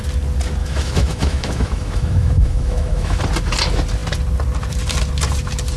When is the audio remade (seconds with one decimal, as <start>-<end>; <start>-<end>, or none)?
0.6-3.2